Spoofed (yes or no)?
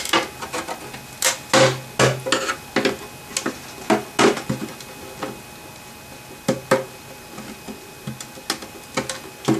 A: no